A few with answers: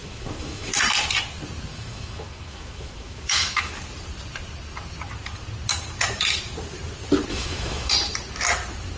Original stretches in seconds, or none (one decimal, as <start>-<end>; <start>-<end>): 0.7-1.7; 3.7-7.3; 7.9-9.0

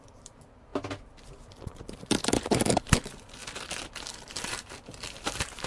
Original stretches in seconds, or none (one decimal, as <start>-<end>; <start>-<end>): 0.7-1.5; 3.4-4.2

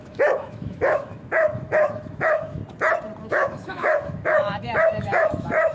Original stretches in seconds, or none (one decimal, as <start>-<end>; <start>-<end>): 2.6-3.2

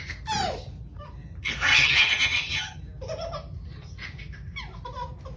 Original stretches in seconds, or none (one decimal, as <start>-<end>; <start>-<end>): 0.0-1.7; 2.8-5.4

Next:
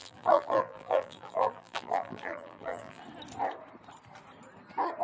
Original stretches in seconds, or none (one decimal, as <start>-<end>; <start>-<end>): 3.0-5.0

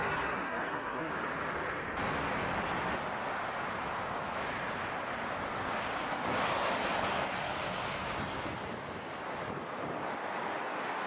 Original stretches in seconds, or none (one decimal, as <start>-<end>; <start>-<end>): 1.1-11.1